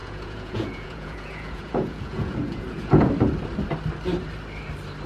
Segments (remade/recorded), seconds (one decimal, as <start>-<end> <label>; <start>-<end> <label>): 0.0-3.1 remade; 3.1-5.1 recorded